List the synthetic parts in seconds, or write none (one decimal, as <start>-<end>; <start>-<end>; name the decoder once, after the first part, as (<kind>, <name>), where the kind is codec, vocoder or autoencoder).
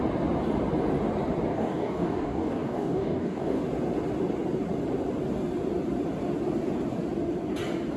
1.5-3.6 (codec, DAC)